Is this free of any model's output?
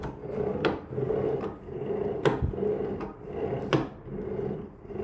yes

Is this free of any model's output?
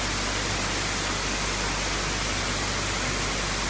yes